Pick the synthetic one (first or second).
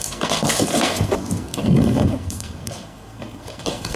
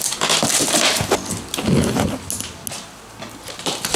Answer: first